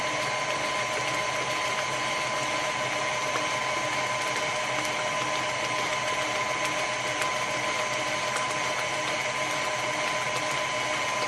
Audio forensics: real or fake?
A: real